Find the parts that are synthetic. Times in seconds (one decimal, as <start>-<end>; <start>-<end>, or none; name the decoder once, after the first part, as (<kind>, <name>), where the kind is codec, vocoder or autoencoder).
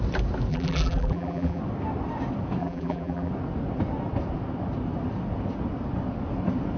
0.5-1.6 (vocoder, BigVGAN v2); 2.6-3.3